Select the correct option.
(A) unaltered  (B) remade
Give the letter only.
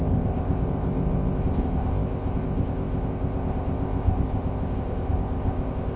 B